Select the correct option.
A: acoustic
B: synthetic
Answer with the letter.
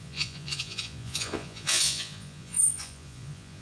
B